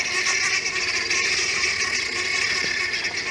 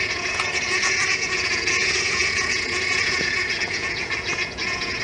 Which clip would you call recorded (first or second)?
first